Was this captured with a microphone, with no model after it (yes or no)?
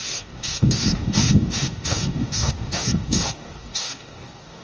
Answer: no